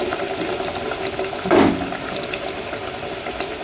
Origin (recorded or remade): recorded